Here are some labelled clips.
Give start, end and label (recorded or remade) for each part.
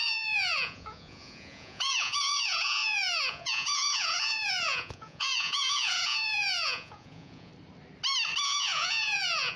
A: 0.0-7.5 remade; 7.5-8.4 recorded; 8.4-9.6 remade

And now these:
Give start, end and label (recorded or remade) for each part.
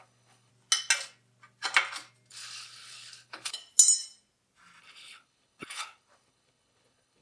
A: 0.0-0.5 remade; 0.5-2.3 recorded; 2.3-3.6 remade; 3.6-4.8 recorded; 4.8-7.2 remade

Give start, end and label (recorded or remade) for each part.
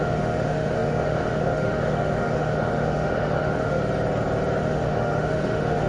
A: 0.0-3.8 remade; 3.8-4.6 recorded; 4.6-5.9 remade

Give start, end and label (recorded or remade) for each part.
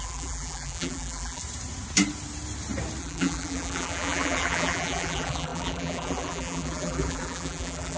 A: 0.0-1.4 remade; 1.4-3.0 recorded; 3.0-8.0 remade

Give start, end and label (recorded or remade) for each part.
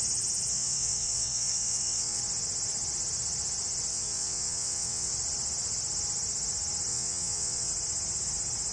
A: 0.0-0.5 recorded; 0.5-2.2 remade; 2.2-3.9 recorded; 3.9-5.1 remade; 5.1-6.9 recorded; 6.9-7.7 remade; 7.7-8.7 recorded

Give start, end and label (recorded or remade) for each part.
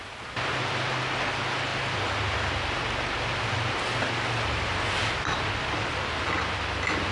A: 0.0-7.1 recorded